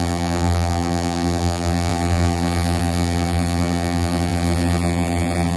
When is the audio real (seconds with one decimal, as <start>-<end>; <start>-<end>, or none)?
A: none